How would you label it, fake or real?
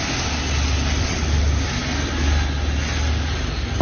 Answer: real